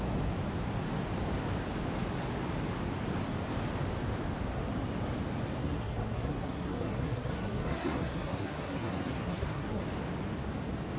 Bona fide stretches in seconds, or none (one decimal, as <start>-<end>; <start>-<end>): 0.0-5.6; 9.8-11.0